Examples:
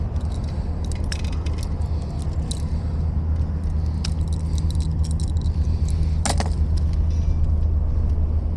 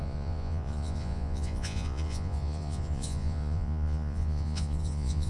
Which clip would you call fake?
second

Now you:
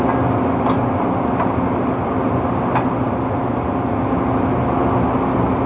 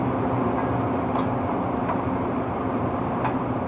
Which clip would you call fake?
second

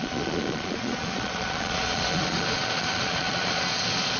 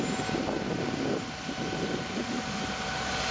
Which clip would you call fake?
first